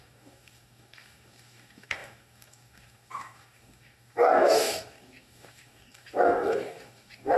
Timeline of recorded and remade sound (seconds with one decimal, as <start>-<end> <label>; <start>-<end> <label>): 0.0-7.4 remade